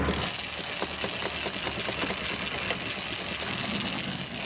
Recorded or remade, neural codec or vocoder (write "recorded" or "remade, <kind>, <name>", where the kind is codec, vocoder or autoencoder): recorded